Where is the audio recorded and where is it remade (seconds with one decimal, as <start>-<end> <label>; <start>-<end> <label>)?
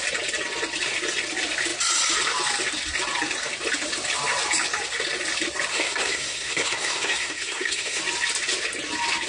0.0-5.7 recorded; 5.7-8.0 remade; 8.0-9.3 recorded